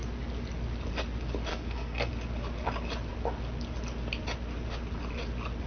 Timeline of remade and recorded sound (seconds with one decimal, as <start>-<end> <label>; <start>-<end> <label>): 0.0-1.5 recorded; 1.5-2.1 remade; 2.1-5.7 recorded